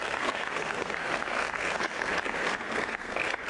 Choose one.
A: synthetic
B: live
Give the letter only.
A